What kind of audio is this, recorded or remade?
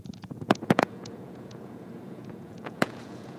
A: remade